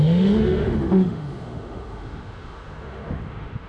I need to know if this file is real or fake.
fake